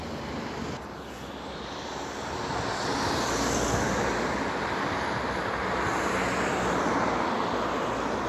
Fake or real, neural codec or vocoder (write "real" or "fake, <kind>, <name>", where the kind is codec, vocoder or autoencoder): real